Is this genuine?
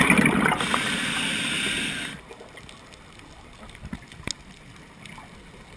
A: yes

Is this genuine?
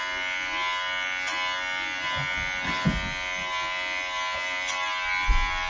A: yes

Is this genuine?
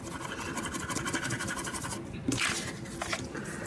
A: yes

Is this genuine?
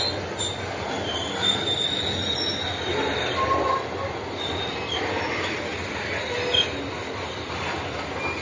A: yes